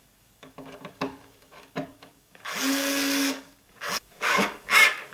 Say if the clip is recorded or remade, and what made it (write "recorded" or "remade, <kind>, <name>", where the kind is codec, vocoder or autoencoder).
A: remade, codec, DAC